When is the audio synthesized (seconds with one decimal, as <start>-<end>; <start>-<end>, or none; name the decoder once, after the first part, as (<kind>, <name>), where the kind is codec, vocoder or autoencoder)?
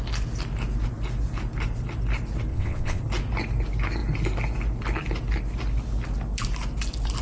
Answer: 2.5-3.0 (vocoder, WaveNeXt)